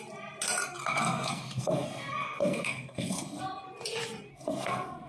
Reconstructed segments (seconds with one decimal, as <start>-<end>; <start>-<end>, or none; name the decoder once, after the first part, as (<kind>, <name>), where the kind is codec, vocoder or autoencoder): 0.8-3.4 (codec, SNAC); 4.3-5.1